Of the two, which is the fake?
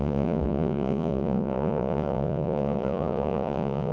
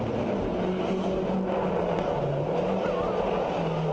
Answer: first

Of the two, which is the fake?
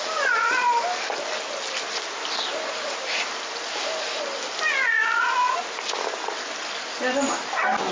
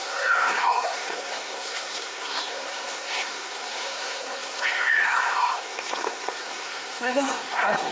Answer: second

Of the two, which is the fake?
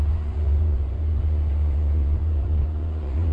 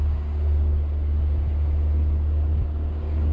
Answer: first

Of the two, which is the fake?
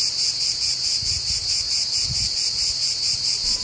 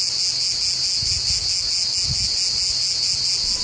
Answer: first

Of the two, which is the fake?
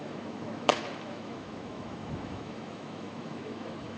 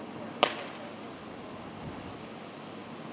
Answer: first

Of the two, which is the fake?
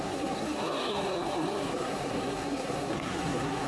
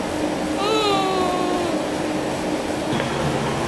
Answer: first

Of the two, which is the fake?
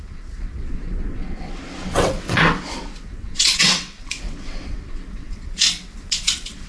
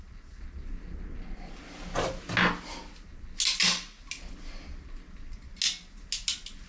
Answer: first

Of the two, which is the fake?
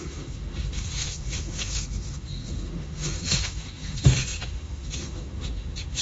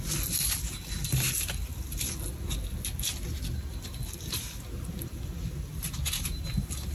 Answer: first